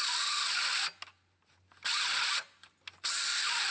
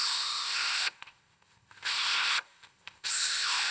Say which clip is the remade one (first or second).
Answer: second